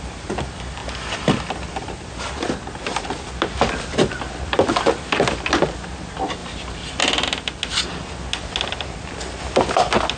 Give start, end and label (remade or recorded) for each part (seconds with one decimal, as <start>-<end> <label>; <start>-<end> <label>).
0.0-10.2 recorded

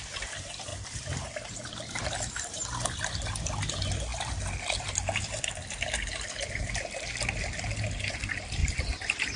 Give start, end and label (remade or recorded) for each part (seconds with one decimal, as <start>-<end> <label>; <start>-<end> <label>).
0.0-9.4 recorded

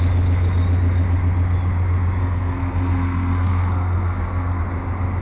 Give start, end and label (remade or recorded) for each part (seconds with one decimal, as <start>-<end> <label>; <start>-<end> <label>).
0.0-2.2 recorded; 2.2-4.6 remade; 4.6-5.2 recorded

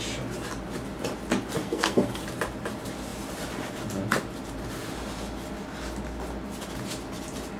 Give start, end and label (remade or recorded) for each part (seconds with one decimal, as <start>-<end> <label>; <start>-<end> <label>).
0.0-1.6 recorded; 1.6-2.2 remade; 2.2-7.6 recorded

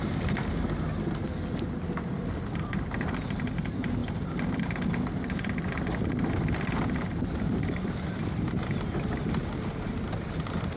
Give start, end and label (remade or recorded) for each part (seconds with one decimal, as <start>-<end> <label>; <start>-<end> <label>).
0.0-10.8 recorded